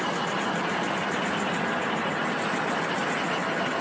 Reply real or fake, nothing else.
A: real